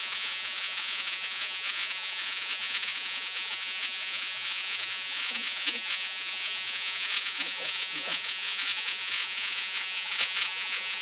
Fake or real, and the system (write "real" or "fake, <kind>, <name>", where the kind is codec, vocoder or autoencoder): fake, vocoder, Vocos